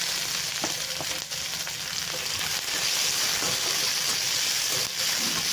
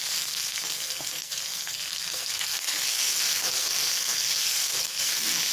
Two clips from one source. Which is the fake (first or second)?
second